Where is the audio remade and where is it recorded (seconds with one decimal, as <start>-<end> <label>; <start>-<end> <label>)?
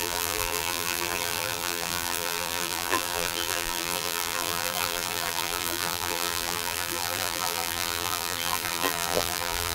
0.0-9.7 remade